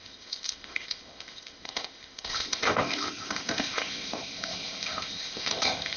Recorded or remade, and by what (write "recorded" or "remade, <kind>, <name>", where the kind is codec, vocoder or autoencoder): remade, codec, ZipCodec